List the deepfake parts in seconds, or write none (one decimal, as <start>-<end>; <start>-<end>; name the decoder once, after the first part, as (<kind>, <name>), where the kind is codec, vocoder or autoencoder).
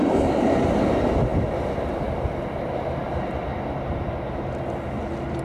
none